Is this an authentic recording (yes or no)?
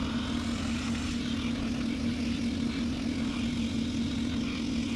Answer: yes